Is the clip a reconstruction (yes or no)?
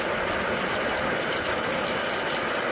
no